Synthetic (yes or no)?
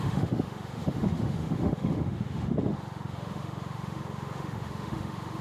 yes